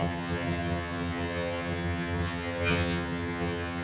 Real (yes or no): no